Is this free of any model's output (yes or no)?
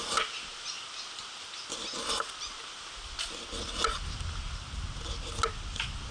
yes